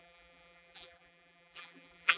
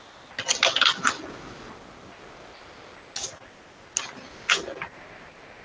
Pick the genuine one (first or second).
second